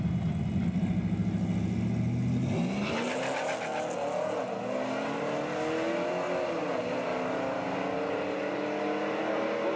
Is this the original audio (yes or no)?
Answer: yes